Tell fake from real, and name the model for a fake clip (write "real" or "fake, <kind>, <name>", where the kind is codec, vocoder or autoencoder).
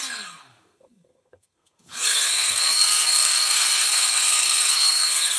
fake, codec, SNAC